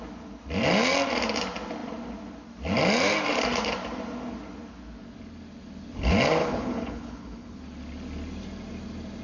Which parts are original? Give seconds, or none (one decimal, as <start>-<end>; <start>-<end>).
0.0-6.4; 7.6-9.2

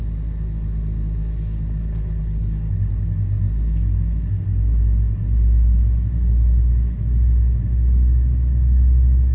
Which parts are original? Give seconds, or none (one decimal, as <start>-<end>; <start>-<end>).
0.0-1.8; 2.9-9.3